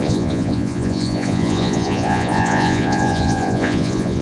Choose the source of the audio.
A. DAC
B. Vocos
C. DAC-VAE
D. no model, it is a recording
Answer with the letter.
B